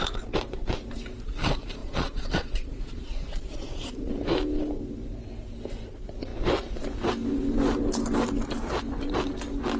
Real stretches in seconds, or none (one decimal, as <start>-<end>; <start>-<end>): 0.0-1.8; 4.1-9.8